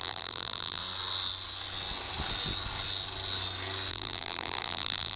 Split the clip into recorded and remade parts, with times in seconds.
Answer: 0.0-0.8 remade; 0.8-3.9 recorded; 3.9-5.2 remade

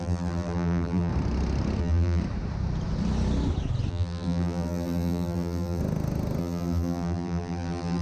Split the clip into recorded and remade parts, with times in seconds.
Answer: 0.0-1.1 remade; 1.1-1.8 recorded; 1.8-2.2 remade; 2.2-3.9 recorded; 3.9-5.8 remade; 5.8-6.4 recorded; 6.4-8.0 remade

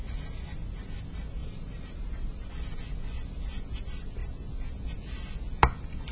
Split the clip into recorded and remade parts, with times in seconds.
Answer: 0.0-1.4 recorded; 1.4-2.5 remade; 2.5-6.1 recorded

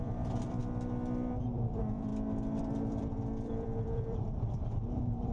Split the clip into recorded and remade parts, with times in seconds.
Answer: 0.0-0.6 remade; 0.6-1.4 recorded; 1.4-2.1 remade; 2.1-2.6 recorded; 2.6-5.3 remade